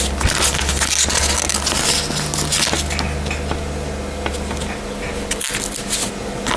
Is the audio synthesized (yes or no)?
no